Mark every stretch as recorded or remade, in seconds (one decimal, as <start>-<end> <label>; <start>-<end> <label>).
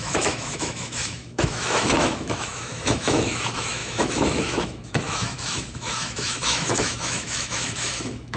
0.0-8.4 remade